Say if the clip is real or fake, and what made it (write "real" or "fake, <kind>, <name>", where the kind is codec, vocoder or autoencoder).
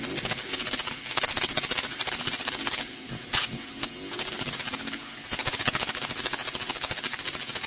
real